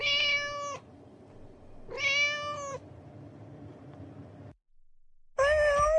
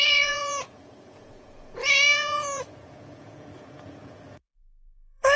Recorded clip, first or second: first